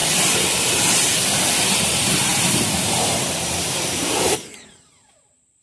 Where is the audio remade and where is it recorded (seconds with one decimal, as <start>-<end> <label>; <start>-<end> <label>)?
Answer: 0.0-1.8 recorded; 1.8-5.6 remade